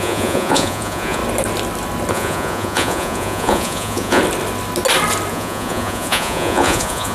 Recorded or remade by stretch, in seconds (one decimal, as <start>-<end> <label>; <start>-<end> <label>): 0.0-1.2 remade; 1.2-2.1 recorded; 2.1-4.2 remade; 4.2-5.3 recorded; 5.3-7.1 remade